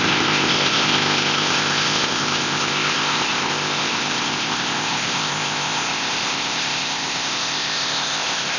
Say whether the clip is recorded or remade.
remade